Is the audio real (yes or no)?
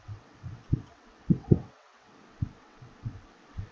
no